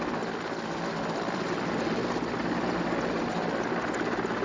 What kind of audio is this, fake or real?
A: real